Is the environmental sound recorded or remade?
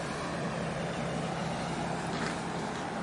recorded